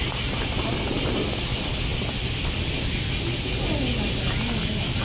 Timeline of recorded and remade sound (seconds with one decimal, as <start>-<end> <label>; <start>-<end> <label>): 0.0-0.6 remade; 0.6-5.0 recorded